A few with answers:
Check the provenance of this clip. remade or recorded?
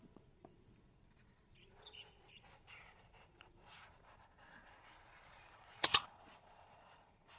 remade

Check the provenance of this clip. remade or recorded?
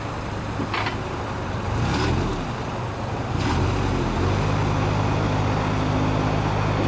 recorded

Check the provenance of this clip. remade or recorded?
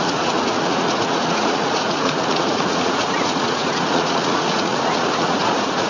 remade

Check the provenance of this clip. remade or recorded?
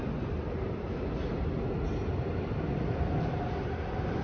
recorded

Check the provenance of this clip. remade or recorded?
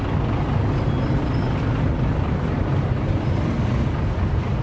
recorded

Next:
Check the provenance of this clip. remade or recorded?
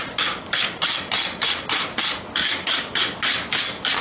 recorded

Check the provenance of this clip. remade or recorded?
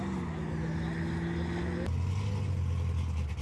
recorded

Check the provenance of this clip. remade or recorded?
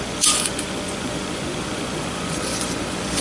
remade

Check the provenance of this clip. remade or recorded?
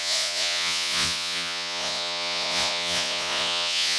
remade